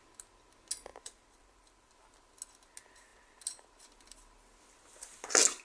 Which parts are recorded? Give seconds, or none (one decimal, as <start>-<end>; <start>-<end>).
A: 0.0-0.9; 1.9-5.6